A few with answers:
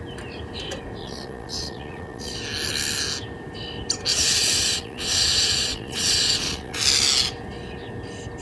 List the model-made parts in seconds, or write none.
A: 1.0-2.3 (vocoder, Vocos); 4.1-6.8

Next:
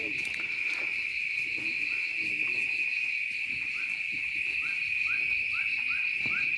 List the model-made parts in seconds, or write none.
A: none

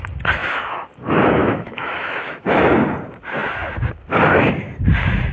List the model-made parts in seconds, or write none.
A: 0.4-0.9 (autoencoder, DAC-VAE); 1.4-2.7